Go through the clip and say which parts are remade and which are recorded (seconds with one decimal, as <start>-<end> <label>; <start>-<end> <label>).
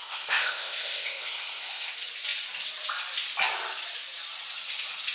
0.0-1.9 remade; 1.9-5.1 recorded